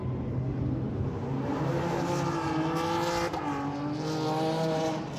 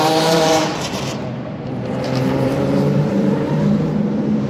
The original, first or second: first